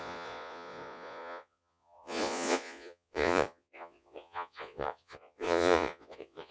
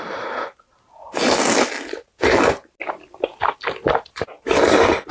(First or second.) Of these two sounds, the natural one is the second